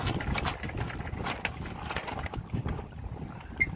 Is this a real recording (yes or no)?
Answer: yes